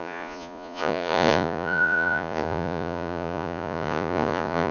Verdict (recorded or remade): remade